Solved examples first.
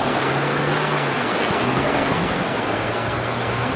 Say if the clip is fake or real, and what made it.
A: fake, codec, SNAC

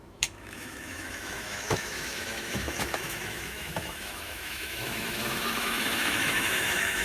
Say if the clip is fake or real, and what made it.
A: fake, autoencoder, DAC-VAE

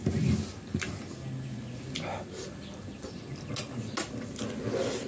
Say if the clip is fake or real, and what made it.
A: real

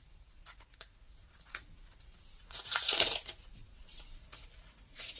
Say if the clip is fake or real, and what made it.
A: fake, vocoder, Vocos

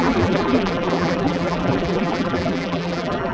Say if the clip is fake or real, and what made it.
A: fake, vocoder, BigVGAN v2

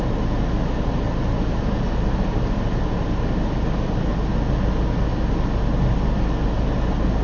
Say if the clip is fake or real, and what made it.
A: real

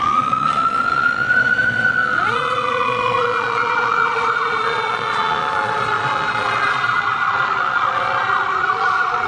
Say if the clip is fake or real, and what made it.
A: fake, vocoder, Vocos